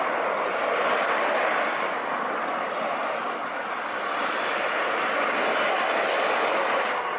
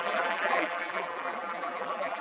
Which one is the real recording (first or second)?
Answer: first